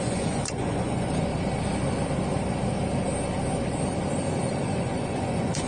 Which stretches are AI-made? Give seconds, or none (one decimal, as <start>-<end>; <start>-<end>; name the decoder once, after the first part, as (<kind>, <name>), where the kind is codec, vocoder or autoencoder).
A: 0.0-1.3 (vocoder, Vocos); 4.6-5.7